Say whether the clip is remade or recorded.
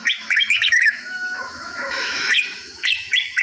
remade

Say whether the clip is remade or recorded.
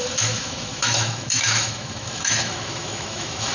remade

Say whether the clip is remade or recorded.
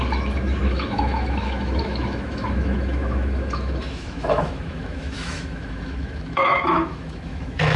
remade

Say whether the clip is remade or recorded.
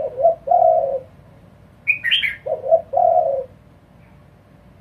recorded